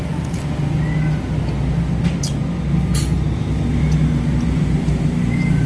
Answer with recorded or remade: recorded